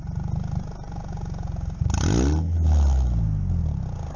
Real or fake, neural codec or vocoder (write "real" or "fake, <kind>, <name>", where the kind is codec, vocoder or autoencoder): real